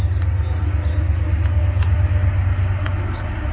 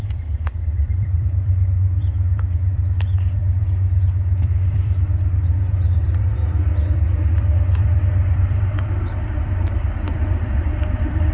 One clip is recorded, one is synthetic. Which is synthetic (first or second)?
second